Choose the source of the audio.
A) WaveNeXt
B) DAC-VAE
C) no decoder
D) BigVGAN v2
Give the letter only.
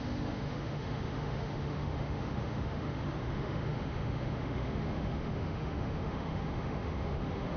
B